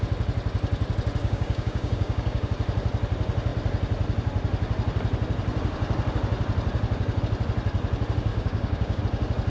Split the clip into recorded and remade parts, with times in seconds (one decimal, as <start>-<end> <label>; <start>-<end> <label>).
0.0-1.2 recorded; 1.2-2.5 remade; 2.5-8.3 recorded; 8.3-9.0 remade; 9.0-9.5 recorded